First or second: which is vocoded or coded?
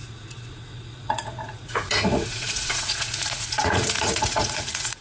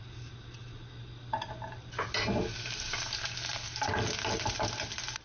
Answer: first